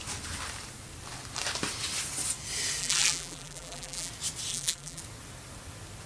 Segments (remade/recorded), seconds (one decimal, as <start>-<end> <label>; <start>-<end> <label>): 0.0-2.8 recorded; 2.8-4.1 remade; 4.1-4.5 recorded; 4.5-5.0 remade; 5.0-6.1 recorded